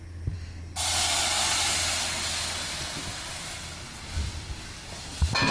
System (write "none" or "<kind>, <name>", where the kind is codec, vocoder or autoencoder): none